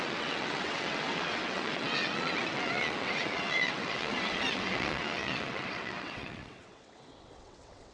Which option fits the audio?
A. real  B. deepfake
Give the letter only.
B